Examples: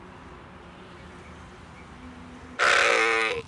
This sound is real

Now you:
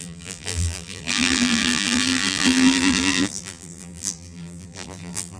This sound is fake